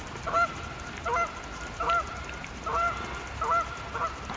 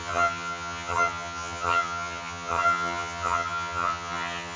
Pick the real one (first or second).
first